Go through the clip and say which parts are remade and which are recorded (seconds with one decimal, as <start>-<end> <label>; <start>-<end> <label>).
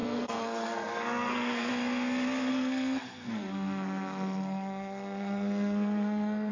0.0-1.7 remade; 1.7-2.5 recorded; 2.5-6.5 remade